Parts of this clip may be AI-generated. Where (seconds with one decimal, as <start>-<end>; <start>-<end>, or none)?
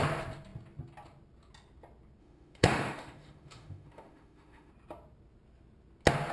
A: 2.2-4.7